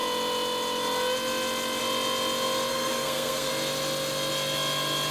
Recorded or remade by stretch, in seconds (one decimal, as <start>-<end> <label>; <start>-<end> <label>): 0.0-2.7 recorded; 2.7-3.5 remade; 3.5-5.1 recorded